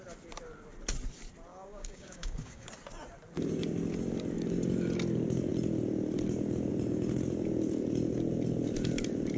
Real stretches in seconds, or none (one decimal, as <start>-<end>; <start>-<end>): 0.0-1.5; 2.7-9.4